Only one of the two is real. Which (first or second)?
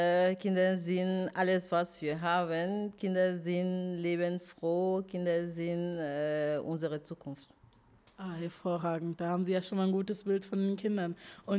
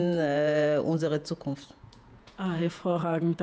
first